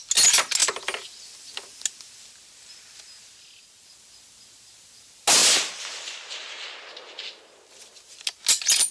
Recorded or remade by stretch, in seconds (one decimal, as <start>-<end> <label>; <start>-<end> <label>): 0.0-8.9 recorded